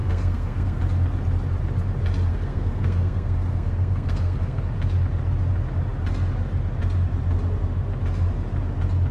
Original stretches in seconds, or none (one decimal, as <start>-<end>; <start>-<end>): 0.8-2.3; 4.6-9.1